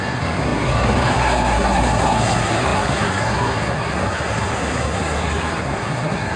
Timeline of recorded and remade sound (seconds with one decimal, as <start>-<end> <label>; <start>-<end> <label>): 0.0-6.4 remade